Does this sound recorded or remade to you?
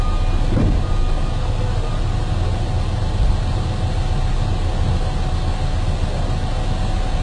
recorded